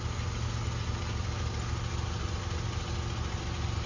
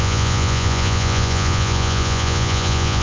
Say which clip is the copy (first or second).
second